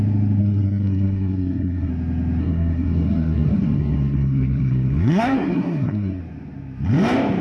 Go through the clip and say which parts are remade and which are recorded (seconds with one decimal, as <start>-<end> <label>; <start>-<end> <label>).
0.0-0.4 recorded; 0.4-1.9 remade; 1.9-2.4 recorded; 2.4-6.2 remade; 6.2-7.4 recorded